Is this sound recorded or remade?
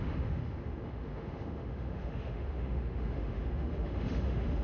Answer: remade